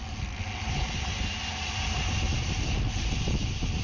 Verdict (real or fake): real